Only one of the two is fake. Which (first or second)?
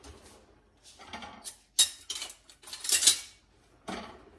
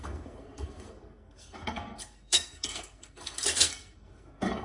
second